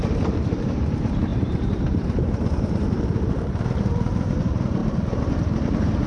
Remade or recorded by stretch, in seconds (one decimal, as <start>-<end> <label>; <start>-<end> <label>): 0.0-4.8 remade; 4.8-6.1 recorded